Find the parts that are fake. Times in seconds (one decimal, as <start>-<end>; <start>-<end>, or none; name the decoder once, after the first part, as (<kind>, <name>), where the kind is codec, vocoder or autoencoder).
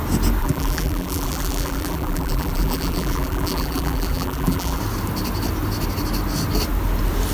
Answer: 0.4-4.8 (vocoder, BigVGAN v2)